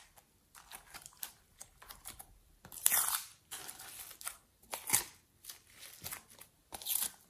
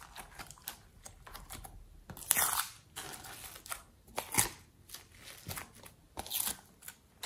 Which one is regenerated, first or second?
first